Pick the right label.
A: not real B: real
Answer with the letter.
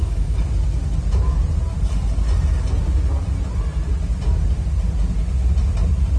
B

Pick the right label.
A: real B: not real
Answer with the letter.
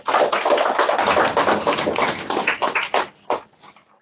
A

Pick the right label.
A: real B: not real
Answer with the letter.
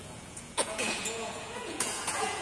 B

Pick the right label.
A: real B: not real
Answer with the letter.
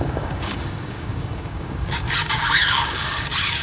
B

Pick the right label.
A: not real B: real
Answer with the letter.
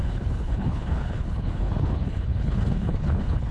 A